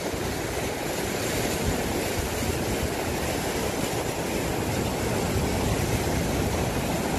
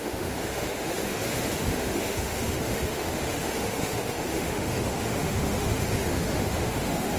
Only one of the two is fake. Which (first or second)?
second